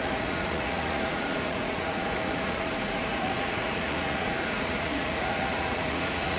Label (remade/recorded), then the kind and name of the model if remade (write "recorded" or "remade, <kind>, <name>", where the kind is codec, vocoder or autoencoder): remade, vocoder, Vocos